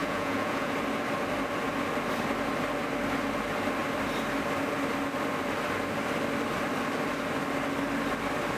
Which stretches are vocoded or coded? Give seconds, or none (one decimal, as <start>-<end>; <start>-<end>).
0.0-0.7